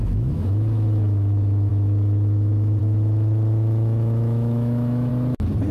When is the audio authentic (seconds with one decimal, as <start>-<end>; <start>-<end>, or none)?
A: 5.1-5.7